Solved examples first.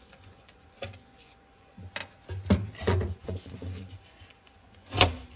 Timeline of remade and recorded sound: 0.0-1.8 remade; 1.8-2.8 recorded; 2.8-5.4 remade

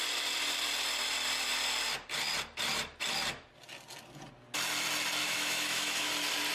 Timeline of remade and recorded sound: 0.0-5.2 recorded; 5.2-6.1 remade; 6.1-6.5 recorded